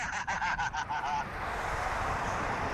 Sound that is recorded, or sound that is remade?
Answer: remade